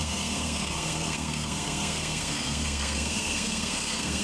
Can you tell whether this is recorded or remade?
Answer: remade